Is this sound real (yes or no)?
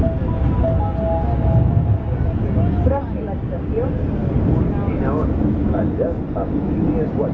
yes